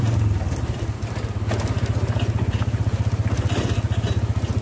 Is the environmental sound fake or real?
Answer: real